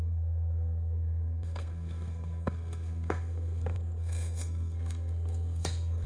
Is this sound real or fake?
fake